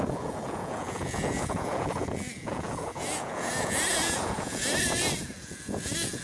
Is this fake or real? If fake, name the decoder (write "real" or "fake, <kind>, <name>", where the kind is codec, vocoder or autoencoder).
fake, vocoder, Vocos